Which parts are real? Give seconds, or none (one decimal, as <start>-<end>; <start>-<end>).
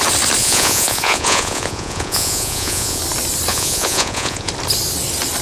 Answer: 0.0-0.4; 3.0-3.5; 4.5-5.4